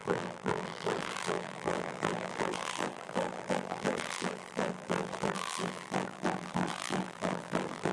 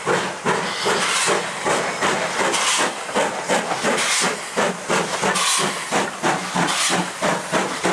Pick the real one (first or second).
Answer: second